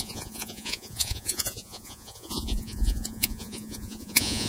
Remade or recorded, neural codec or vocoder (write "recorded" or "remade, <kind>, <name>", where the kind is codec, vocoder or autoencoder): remade, vocoder, Vocos